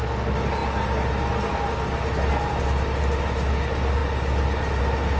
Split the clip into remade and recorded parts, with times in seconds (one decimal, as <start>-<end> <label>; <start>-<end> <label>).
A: 0.0-5.2 recorded

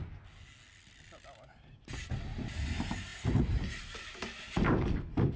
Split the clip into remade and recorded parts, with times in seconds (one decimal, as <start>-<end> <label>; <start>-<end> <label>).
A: 0.0-5.4 recorded

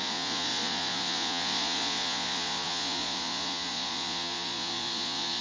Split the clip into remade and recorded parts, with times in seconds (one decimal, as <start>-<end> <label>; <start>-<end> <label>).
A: 0.0-5.4 remade

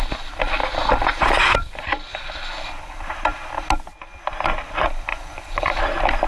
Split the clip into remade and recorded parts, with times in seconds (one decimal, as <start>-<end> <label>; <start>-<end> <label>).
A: 0.0-5.1 recorded; 5.1-5.8 remade; 5.8-6.3 recorded